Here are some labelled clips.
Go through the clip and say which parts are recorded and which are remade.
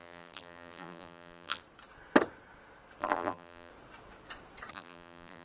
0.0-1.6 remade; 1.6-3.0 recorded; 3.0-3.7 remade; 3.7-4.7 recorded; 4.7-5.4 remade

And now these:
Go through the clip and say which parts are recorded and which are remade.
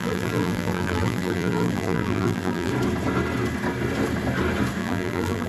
0.0-2.7 remade; 2.7-4.8 recorded; 4.8-5.5 remade